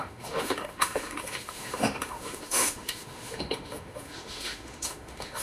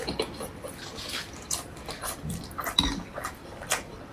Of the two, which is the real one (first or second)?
second